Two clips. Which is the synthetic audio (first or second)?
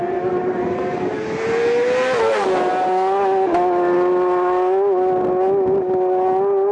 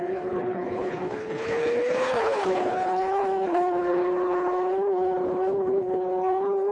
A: second